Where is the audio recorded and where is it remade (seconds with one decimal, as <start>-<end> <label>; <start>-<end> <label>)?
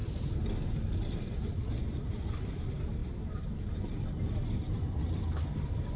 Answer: 0.0-6.0 recorded